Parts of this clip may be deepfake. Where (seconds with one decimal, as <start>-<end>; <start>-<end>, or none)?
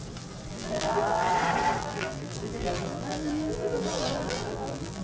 0.5-1.3; 1.8-5.0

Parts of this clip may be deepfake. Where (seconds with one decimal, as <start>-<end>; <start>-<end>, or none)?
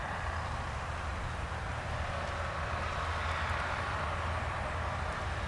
0.0-1.1; 4.4-5.5